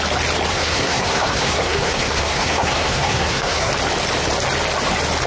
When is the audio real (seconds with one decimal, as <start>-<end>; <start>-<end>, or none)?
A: 0.0-0.5; 3.7-5.3